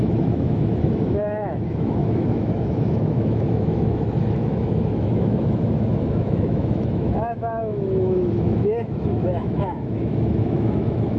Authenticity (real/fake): fake